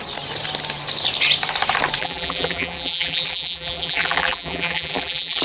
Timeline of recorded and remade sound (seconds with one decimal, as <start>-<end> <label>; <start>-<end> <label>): 0.0-2.0 recorded; 2.0-5.4 remade